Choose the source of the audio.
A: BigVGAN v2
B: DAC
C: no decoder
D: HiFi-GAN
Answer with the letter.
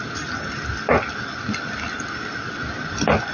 C